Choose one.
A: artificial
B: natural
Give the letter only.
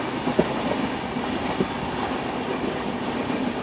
B